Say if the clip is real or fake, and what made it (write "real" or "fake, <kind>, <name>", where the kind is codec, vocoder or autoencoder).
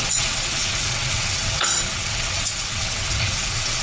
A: fake, vocoder, WaveNeXt